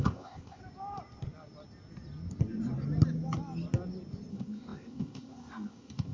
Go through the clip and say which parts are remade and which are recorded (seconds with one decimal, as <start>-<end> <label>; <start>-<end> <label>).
0.0-0.6 remade; 0.6-4.3 recorded; 4.3-6.1 remade